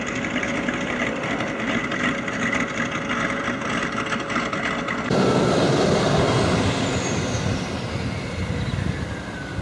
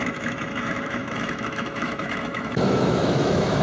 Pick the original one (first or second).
first